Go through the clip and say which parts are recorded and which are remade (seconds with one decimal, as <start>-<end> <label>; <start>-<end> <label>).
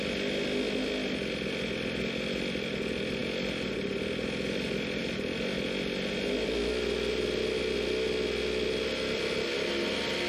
0.0-10.3 recorded